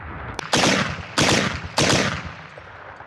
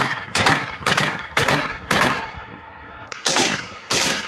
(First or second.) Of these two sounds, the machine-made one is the second